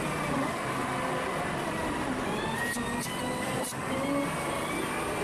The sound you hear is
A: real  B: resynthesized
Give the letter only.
A